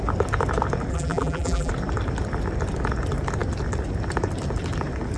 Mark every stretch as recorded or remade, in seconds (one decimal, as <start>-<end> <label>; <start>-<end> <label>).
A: 0.0-0.9 recorded; 0.9-1.7 remade; 1.7-5.2 recorded